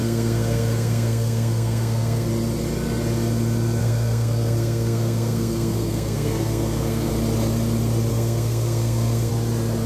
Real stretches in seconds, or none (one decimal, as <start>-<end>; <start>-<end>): 2.3-3.8; 7.1-8.1; 9.3-9.9